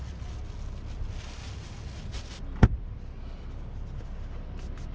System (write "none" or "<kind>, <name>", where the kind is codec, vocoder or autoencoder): none